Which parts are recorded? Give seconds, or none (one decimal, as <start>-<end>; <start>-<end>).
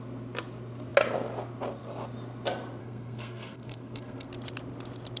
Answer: 0.0-2.8; 4.3-5.2